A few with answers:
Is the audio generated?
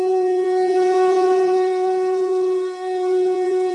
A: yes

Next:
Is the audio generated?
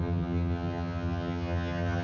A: yes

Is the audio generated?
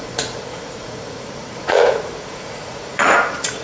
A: yes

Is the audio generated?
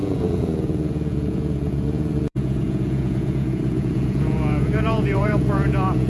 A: yes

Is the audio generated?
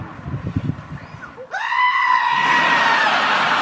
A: yes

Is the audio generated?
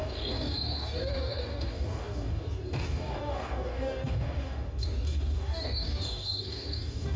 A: yes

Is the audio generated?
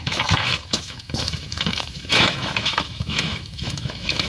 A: yes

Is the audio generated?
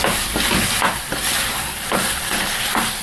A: no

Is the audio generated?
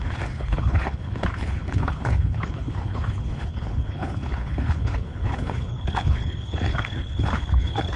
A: yes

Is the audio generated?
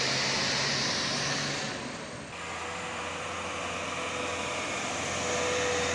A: no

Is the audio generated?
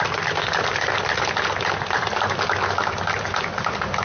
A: no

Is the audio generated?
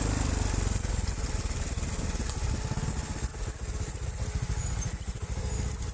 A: no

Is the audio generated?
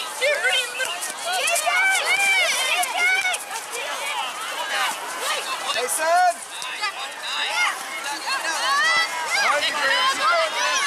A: no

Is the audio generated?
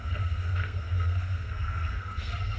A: yes